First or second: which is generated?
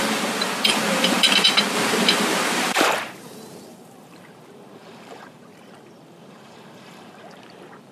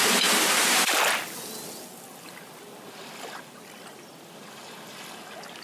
first